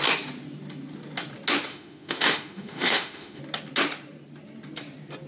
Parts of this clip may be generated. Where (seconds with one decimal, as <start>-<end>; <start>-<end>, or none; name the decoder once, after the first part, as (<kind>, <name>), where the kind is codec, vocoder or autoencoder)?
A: 1.7-3.4 (autoencoder, DAC-VAE)